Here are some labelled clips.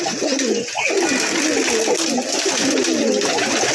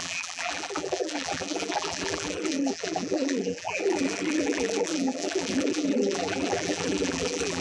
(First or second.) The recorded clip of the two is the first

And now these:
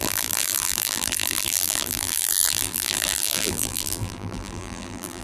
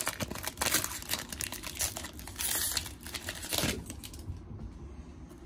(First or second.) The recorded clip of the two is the second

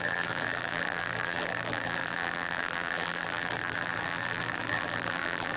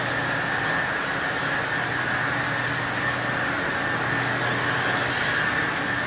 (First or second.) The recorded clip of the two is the second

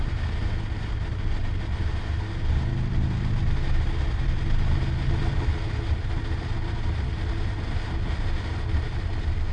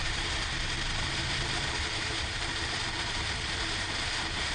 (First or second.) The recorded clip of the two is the first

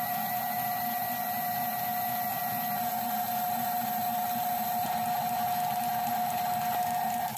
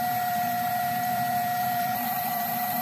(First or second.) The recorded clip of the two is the first